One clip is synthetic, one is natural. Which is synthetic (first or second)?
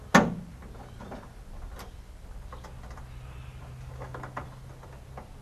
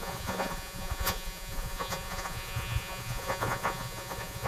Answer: second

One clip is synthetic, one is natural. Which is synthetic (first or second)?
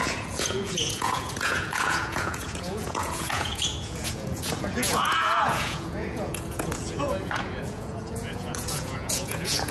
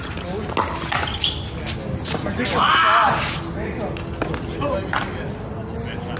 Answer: first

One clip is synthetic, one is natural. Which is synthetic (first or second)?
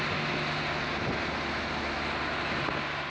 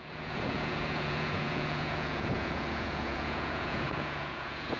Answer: second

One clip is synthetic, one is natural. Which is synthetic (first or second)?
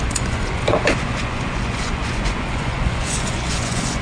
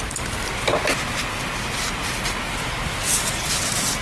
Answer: first